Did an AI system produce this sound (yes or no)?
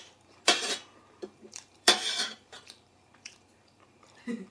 yes